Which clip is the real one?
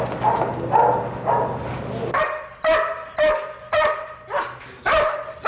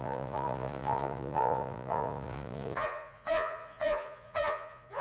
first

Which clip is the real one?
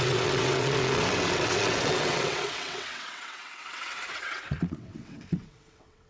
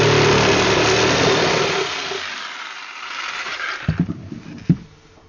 second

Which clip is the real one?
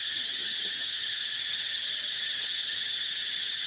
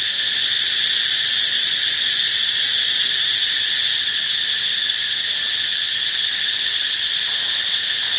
second